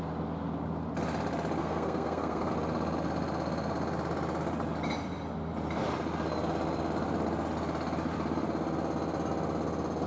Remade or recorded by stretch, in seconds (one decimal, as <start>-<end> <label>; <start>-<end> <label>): 0.0-1.6 recorded; 1.6-2.5 remade; 2.5-10.1 recorded